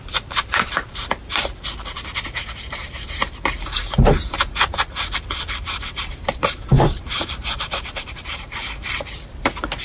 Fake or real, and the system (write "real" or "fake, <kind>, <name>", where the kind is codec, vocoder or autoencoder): fake, vocoder, BigVGAN v2